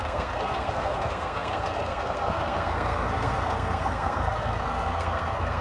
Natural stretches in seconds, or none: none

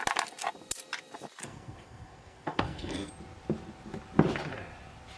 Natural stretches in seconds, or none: 0.0-1.4; 3.1-5.2

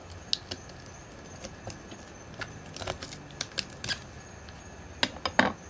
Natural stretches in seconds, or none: 0.0-5.7

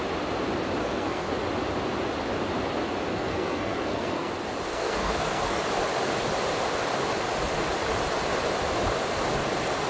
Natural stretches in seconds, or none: 0.0-0.8; 1.3-3.1; 4.3-4.7; 5.6-9.9